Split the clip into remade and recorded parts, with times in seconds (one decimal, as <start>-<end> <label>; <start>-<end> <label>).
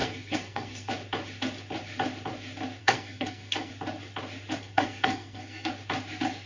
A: 0.0-0.9 remade; 0.9-2.8 recorded; 2.8-3.7 remade; 3.7-4.6 recorded; 4.6-5.7 remade; 5.7-6.5 recorded